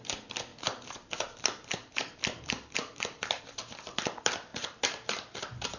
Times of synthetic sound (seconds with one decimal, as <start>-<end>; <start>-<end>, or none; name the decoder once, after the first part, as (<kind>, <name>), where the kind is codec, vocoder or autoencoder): 0.5-3.4 (vocoder, BigVGAN v2); 4.5-5.8